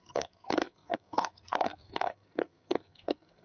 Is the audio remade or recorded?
remade